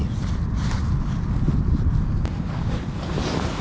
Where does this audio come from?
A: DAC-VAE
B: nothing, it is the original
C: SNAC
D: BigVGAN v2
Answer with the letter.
B